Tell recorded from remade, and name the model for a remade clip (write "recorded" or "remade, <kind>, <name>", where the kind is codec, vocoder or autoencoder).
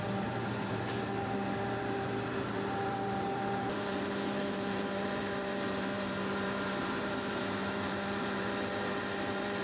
remade, vocoder, BigVGAN v2